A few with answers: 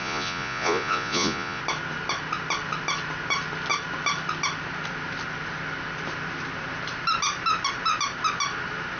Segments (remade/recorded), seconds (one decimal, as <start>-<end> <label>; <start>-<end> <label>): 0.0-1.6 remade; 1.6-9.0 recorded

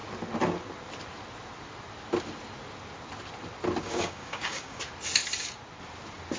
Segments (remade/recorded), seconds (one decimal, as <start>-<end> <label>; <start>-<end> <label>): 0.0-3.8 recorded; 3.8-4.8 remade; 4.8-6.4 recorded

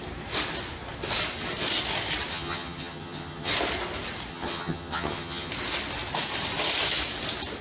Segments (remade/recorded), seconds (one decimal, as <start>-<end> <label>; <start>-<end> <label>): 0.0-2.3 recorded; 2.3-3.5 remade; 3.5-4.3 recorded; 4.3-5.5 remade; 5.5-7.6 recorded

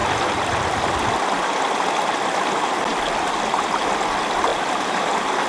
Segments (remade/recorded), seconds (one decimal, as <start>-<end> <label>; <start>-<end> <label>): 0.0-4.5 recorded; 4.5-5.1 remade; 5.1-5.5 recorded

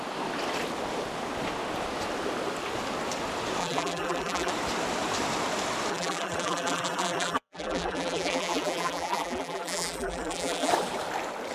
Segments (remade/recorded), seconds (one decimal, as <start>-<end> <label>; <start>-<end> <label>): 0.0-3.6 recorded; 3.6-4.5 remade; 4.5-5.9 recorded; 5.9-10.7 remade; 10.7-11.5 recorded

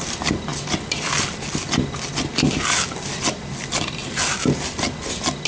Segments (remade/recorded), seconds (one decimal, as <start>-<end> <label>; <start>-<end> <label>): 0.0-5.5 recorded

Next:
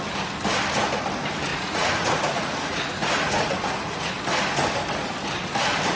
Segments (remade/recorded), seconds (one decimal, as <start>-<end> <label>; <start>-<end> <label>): 0.0-1.5 recorded; 1.5-4.1 remade; 4.1-6.0 recorded